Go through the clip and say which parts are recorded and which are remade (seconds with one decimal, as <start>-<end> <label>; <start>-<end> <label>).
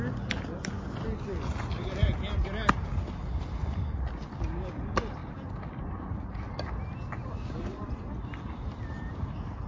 0.0-9.7 recorded